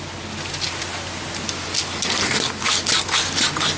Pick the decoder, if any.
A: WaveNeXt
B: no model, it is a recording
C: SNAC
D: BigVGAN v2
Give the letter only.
B